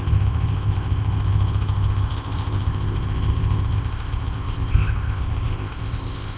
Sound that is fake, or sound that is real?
fake